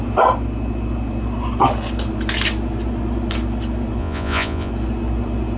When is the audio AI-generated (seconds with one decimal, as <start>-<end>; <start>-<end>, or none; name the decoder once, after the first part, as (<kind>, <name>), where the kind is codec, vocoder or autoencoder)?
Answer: 4.0-4.7 (vocoder, Vocos)